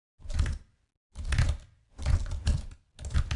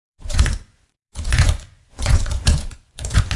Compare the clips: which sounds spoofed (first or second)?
second